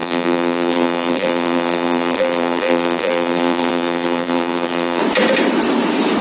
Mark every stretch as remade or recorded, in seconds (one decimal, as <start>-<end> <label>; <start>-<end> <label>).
0.0-5.0 remade; 5.0-6.2 recorded